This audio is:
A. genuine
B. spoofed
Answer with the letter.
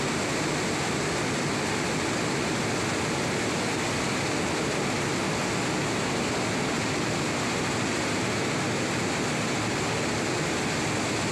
A